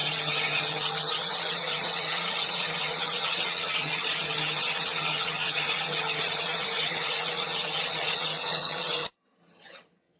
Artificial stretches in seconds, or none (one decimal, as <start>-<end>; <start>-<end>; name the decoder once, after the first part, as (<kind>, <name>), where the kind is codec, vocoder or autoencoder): 0.0-10.2 (vocoder, HiFi-GAN)